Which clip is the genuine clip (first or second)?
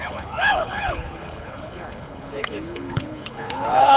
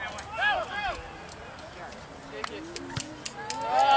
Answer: second